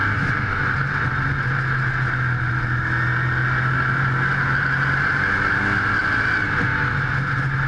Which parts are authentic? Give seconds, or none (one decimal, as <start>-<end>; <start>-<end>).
0.0-7.7